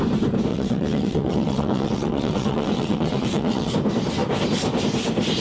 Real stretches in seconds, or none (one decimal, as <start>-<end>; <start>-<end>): 0.0-0.5; 3.7-5.4